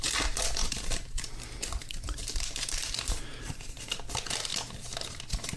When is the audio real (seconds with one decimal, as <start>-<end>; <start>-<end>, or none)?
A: 0.0-0.6; 4.0-5.6